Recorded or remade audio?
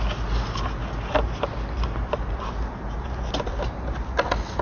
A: recorded